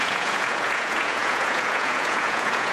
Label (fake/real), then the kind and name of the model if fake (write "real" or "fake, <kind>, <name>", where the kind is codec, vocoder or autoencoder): fake, vocoder, Vocos